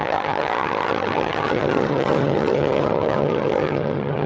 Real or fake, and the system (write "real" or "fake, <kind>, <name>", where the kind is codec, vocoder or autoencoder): fake, vocoder, HiFi-GAN